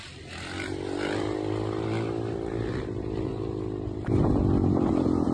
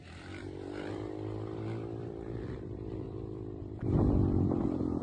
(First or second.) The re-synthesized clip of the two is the second